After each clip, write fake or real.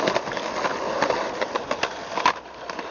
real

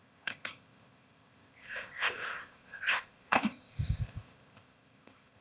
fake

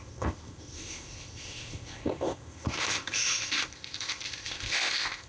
fake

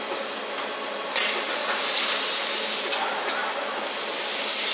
real